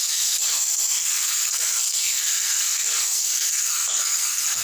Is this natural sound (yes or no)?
no